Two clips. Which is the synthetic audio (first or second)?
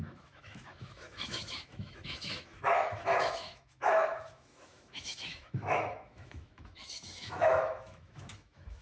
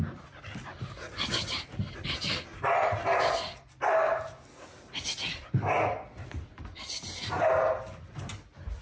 first